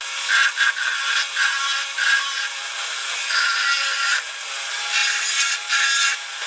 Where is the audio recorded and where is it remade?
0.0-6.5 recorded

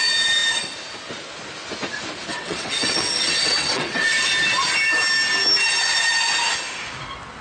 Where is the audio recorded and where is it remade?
0.0-2.3 recorded; 2.3-4.3 remade; 4.3-7.4 recorded

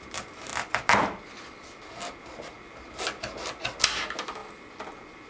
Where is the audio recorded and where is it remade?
0.0-5.3 recorded

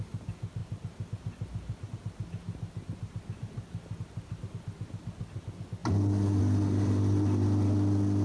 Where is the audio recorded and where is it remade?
0.0-8.2 recorded

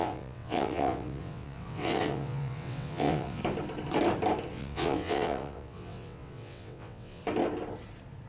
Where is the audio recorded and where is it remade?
0.0-3.4 remade; 3.4-4.5 recorded; 4.5-7.2 remade; 7.2-8.3 recorded

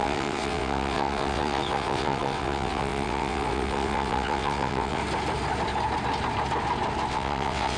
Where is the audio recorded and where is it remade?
0.0-5.0 remade; 5.0-7.1 recorded; 7.1-7.8 remade

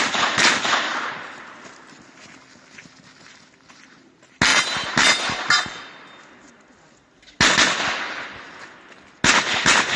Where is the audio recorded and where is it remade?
0.0-10.0 recorded